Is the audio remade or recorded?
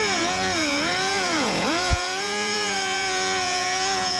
remade